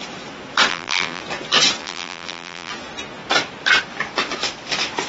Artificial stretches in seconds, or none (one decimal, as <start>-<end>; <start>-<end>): 0.7-1.2; 1.8-2.7